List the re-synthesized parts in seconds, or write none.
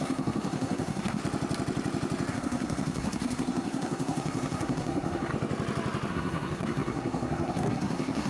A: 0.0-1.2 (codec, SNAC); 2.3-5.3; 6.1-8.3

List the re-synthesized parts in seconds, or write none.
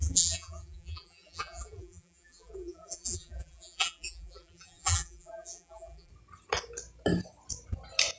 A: 0.0-6.1 (vocoder, BigVGAN v2)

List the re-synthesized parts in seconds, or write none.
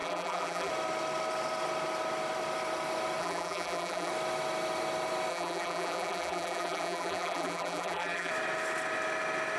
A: 0.0-0.7 (vocoder, BigVGAN v2); 3.2-4.1; 5.3-8.3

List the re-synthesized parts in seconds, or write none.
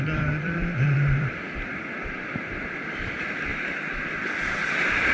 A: 0.0-1.7 (vocoder, BigVGAN v2); 2.3-3.5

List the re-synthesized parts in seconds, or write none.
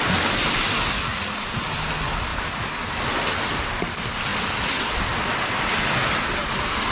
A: 1.0-1.5 (vocoder, Vocos)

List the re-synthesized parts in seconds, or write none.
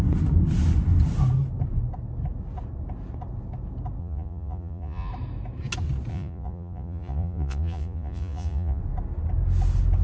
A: 4.0-5.1 (vocoder, Vocos); 6.1-8.8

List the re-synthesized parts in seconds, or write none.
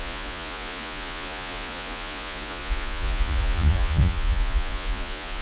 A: 0.0-5.4 (vocoder, Vocos)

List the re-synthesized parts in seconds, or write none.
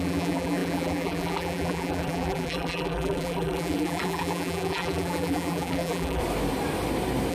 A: 0.0-6.2 (vocoder, BigVGAN v2)